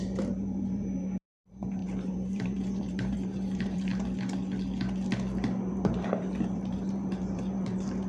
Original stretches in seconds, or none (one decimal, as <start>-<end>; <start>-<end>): 3.9-5.7